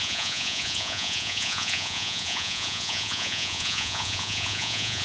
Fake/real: fake